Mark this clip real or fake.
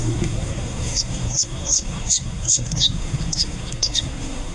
fake